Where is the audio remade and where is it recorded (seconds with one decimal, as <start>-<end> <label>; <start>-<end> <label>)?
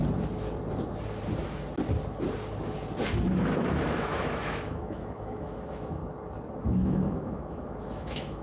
0.0-3.3 recorded; 3.3-6.0 remade; 6.0-6.6 recorded; 6.6-8.4 remade